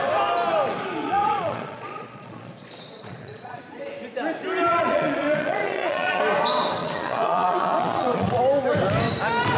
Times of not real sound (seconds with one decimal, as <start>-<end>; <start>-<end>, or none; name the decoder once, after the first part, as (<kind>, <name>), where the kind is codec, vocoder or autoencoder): 1.0-3.6 (vocoder, Vocos); 4.7-6.2; 6.8-8.4